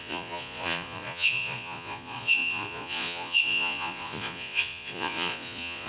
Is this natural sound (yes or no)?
no